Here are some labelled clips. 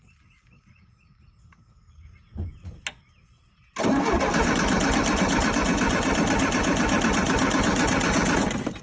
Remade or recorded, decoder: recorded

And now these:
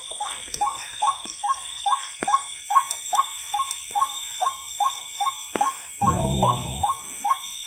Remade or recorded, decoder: remade, codec, SNAC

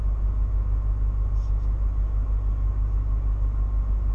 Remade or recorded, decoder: recorded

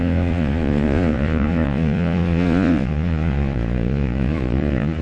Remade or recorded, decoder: remade, vocoder, Vocos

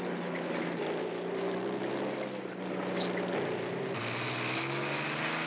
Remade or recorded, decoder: recorded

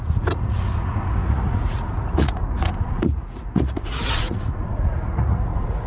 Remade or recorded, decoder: remade, vocoder, Vocos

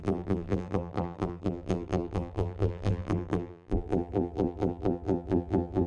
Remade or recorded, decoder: remade, vocoder, BigVGAN v2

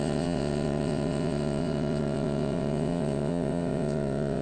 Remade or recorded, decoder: remade, vocoder, WaveNeXt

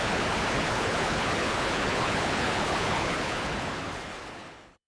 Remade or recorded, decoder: remade, codec, HILCodec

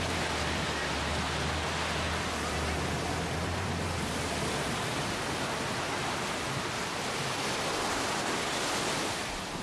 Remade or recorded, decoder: recorded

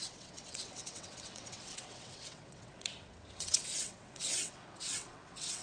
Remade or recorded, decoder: remade, vocoder, WaveNeXt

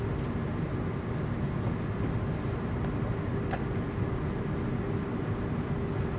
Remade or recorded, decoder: recorded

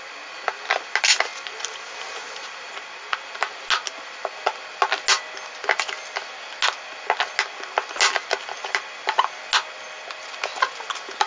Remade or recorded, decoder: recorded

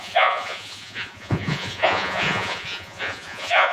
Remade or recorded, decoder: remade, vocoder, Vocos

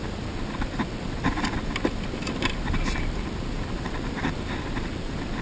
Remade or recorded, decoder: recorded